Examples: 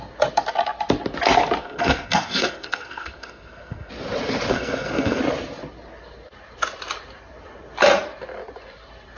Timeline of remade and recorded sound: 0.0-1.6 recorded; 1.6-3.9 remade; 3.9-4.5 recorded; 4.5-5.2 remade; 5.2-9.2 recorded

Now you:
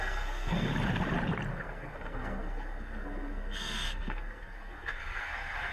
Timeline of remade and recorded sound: 0.0-0.7 remade; 0.7-1.5 recorded; 1.5-5.7 remade

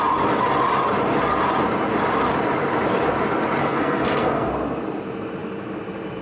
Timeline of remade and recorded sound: 0.0-3.6 recorded; 3.6-4.5 remade; 4.5-6.2 recorded

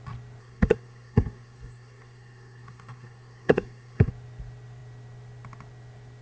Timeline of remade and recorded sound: 0.0-0.4 recorded; 0.4-4.1 remade; 4.1-6.2 recorded

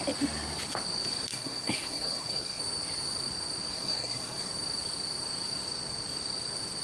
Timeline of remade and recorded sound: 0.0-1.3 recorded; 1.3-2.6 remade; 2.6-3.7 recorded; 3.7-4.5 remade; 4.5-6.8 recorded